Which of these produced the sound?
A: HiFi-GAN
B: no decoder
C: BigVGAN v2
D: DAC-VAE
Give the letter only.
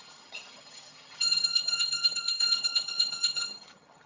A